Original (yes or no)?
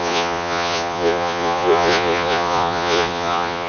no